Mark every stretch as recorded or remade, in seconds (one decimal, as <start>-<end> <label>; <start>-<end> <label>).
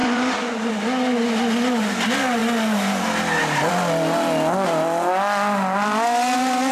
0.0-0.7 remade; 0.7-6.7 recorded